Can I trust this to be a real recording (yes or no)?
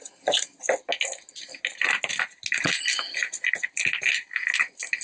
yes